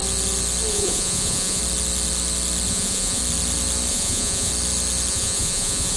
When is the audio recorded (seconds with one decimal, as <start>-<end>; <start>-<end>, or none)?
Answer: 0.0-0.7; 1.6-2.7; 3.2-3.9; 4.5-5.1